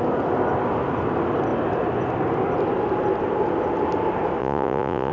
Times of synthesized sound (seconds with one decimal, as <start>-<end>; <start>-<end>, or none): 4.4-5.1